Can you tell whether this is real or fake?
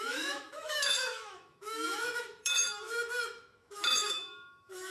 fake